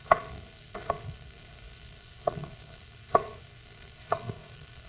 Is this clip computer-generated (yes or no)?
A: yes